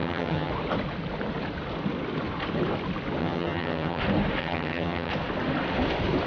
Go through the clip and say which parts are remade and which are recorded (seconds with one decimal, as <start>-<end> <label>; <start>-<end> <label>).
0.0-0.5 remade; 0.5-3.2 recorded; 3.2-4.0 remade; 4.0-4.4 recorded; 4.4-5.1 remade; 5.1-6.3 recorded